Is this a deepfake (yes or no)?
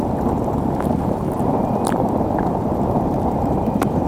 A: yes